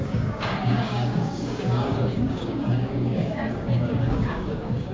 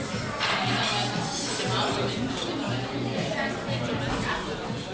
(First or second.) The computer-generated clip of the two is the first